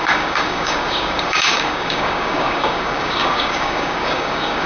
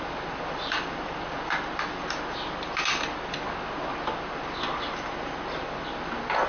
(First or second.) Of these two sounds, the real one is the second